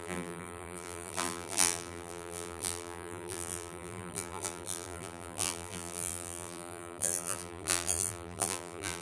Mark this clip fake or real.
fake